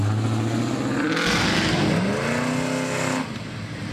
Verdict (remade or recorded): recorded